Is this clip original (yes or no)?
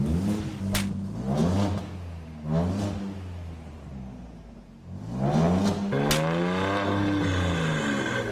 yes